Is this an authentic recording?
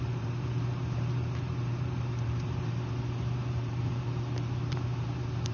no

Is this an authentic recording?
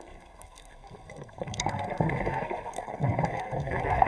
no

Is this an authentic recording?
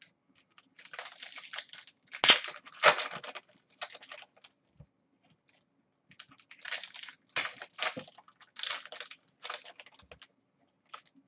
yes